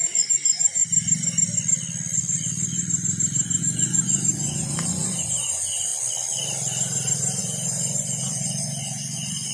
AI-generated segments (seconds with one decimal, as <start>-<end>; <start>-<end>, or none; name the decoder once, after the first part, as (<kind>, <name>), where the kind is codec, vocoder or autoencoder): 0.0-0.8 (vocoder, Vocos); 3.6-5.9; 7.4-9.5